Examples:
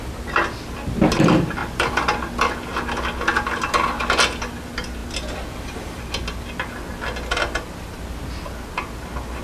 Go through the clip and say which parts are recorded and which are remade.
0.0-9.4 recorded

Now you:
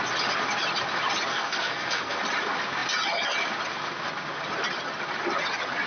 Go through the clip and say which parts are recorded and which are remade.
0.0-1.3 recorded; 1.3-2.2 remade; 2.2-5.9 recorded

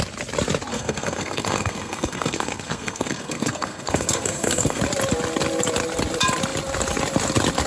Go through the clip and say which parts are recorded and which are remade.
0.0-0.7 recorded; 0.7-4.8 remade; 4.8-7.7 recorded

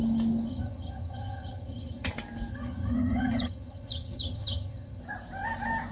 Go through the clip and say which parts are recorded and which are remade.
0.0-0.5 recorded; 0.5-2.1 remade; 2.1-2.5 recorded; 2.5-5.0 remade; 5.0-5.9 recorded